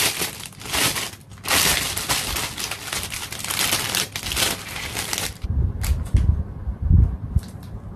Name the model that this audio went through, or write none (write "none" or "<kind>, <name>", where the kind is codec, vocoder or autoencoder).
none